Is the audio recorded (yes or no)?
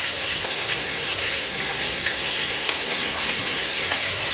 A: no